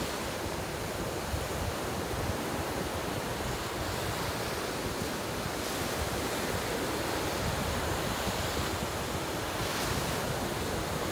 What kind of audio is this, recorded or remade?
recorded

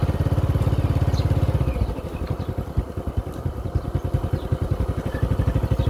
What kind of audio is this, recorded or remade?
recorded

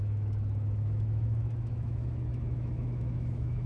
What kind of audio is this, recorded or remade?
remade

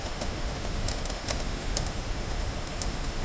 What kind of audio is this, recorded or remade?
remade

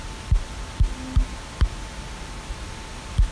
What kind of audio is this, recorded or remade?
recorded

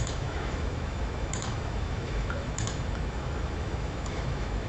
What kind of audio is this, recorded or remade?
remade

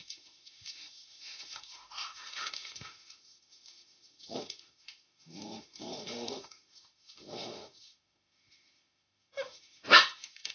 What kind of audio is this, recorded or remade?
remade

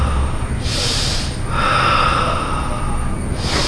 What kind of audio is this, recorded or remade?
recorded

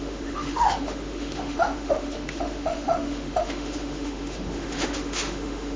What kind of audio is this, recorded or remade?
remade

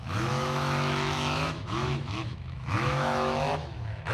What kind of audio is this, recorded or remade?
remade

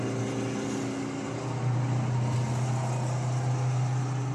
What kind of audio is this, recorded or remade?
recorded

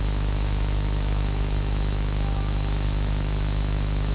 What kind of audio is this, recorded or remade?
remade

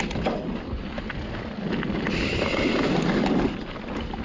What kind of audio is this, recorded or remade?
recorded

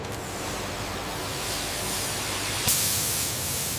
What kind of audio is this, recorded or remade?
recorded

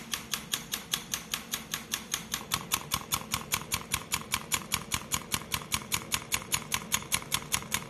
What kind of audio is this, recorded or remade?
recorded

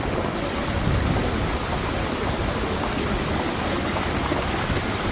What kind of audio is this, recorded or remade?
recorded